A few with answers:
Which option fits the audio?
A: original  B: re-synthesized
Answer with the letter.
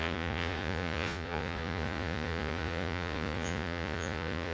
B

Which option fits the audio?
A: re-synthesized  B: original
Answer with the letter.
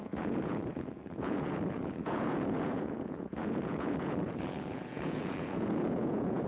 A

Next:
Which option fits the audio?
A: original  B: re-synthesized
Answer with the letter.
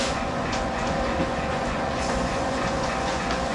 B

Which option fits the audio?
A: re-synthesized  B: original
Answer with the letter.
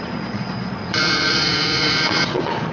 A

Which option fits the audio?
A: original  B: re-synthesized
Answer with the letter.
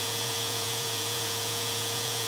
B